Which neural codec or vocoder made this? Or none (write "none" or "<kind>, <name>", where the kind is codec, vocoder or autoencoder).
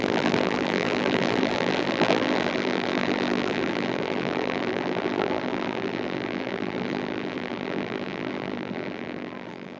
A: vocoder, BigVGAN v2